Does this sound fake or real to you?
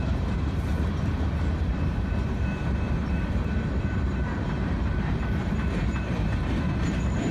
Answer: fake